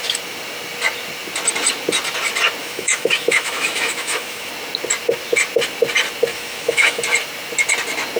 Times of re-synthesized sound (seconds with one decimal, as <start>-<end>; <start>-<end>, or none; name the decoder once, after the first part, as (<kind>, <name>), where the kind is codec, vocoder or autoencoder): 2.6-4.5 (autoencoder, DAC-VAE); 6.3-7.0